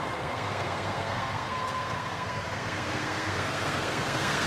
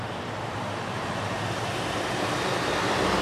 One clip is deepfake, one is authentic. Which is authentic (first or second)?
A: second